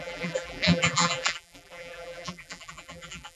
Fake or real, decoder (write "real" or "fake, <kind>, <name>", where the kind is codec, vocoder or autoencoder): fake, vocoder, BigVGAN v2